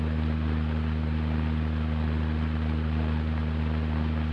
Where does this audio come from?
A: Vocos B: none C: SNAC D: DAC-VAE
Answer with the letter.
B